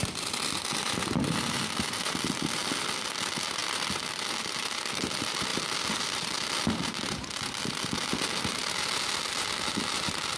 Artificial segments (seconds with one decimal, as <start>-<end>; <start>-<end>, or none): none